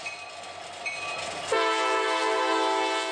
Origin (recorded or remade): recorded